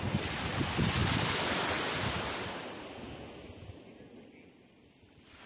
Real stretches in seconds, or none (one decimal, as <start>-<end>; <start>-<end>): 0.0-5.5